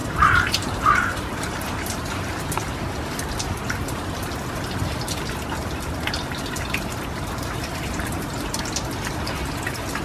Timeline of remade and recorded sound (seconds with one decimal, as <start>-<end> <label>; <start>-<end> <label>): 0.0-2.4 remade; 2.4-10.0 recorded

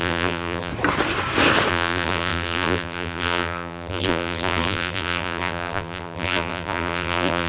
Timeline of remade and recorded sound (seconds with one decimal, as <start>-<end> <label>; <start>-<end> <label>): 0.0-0.7 remade; 0.7-1.7 recorded; 1.7-7.5 remade

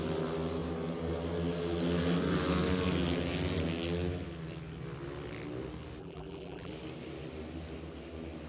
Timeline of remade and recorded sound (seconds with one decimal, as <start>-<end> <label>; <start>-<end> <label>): 0.0-6.0 recorded; 6.0-6.7 remade; 6.7-8.5 recorded